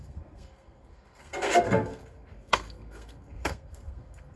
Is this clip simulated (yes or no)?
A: yes